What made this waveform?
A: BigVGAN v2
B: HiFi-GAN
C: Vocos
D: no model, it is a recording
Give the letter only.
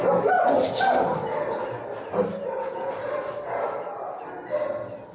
D